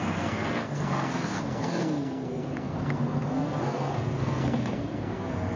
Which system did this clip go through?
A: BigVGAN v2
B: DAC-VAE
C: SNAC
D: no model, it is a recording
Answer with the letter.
C